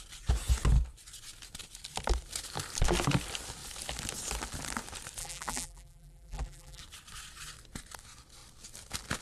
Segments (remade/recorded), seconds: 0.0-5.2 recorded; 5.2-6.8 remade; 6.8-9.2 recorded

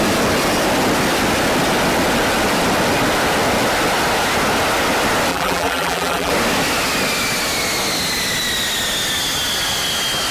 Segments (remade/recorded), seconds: 0.0-5.3 recorded; 5.3-6.3 remade; 6.3-10.3 recorded

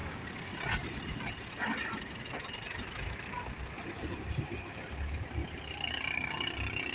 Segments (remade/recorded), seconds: 0.0-2.2 remade; 2.2-6.9 recorded

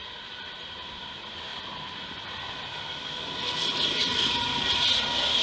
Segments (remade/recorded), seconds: 0.0-5.4 recorded